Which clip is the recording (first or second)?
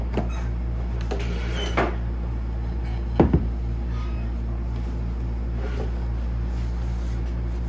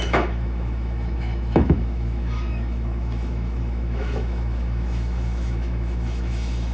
first